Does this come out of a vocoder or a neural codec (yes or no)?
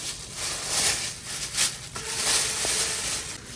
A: no